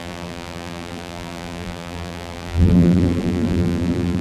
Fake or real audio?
fake